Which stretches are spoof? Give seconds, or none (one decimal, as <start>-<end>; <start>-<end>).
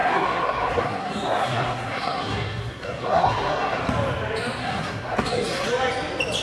0.0-3.8; 4.6-5.7